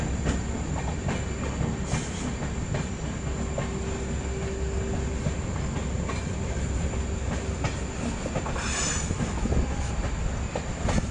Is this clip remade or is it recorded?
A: recorded